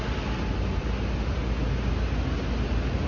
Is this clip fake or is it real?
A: real